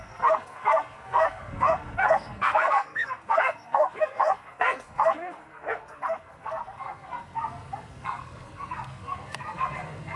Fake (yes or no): yes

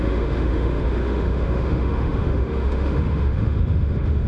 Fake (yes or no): yes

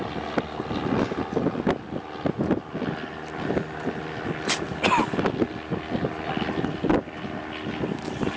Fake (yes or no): no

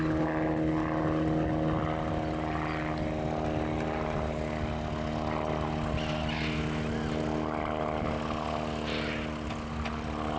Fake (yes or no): no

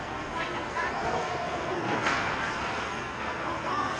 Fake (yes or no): yes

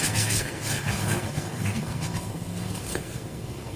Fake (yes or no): yes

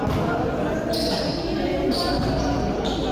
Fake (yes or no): no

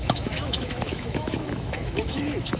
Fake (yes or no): yes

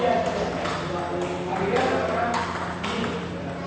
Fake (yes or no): no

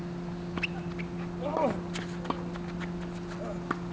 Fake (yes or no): no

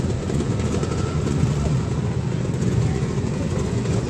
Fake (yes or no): yes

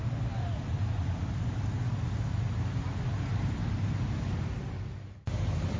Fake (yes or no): no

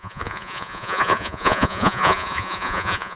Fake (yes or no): yes